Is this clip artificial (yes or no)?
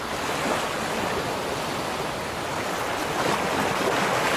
no